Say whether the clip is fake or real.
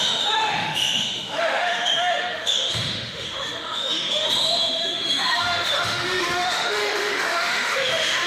fake